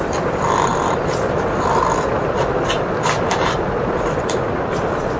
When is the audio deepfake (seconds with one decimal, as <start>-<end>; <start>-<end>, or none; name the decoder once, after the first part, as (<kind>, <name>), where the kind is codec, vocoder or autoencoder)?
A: none